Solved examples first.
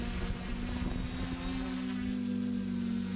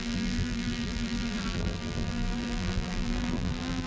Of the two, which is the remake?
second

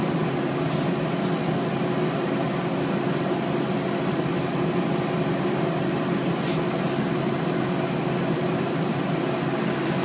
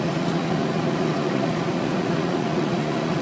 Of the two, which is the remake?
second